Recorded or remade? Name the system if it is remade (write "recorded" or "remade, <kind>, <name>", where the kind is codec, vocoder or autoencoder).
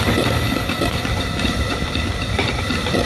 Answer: recorded